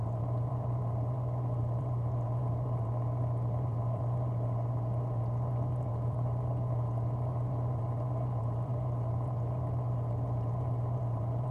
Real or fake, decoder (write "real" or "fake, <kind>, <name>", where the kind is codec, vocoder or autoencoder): fake, vocoder, BigVGAN v2